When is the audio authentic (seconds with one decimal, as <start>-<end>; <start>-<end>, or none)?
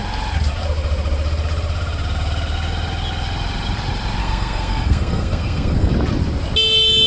0.0-4.2; 5.9-7.1